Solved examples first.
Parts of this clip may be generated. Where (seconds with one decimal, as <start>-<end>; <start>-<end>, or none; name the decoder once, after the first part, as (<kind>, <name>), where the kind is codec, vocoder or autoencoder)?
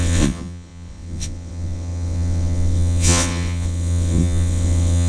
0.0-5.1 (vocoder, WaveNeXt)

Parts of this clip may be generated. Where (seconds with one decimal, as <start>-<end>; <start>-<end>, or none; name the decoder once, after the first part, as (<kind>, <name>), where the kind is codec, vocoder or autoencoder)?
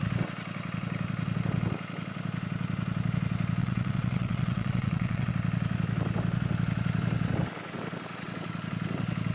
3.6-5.3 (vocoder, WaveNeXt)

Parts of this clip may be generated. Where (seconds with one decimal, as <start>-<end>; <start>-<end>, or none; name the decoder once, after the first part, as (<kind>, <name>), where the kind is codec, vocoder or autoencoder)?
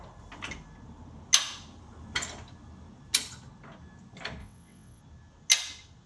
4.4-5.0 (vocoder, WaveNeXt)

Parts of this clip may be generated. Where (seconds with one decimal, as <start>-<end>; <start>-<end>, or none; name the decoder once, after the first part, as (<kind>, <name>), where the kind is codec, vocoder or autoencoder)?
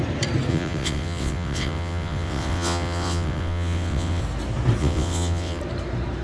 0.5-4.2 (vocoder, WaveNeXt); 4.8-5.6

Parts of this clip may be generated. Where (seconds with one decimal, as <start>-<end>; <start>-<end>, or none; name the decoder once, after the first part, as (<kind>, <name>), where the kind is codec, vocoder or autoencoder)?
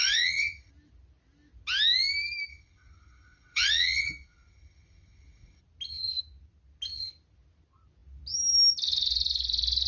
0.0-0.7 (vocoder, WaveNeXt); 2.5-5.6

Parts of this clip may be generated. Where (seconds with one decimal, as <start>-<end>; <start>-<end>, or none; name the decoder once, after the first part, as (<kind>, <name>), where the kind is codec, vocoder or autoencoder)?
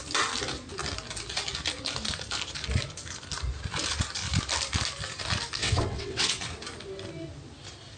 5.6-6.4 (vocoder, WaveNeXt)